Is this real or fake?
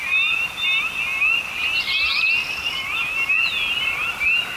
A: real